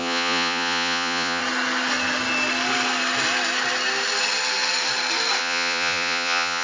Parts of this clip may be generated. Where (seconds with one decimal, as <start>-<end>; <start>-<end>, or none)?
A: 0.0-1.4; 5.4-6.6